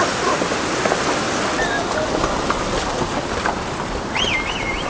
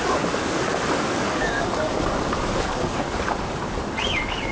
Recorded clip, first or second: first